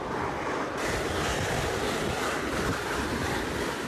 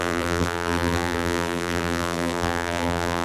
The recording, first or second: first